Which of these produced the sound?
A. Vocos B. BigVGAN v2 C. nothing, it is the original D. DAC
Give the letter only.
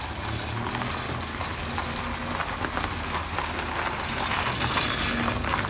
C